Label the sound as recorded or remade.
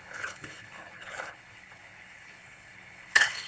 remade